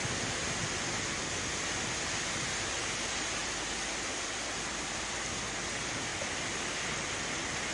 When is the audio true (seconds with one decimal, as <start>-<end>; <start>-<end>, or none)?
1.5-3.4; 5.1-6.1; 7.1-7.7